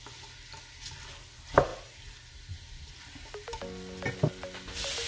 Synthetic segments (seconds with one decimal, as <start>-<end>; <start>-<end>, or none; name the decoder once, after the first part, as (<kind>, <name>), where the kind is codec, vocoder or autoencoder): none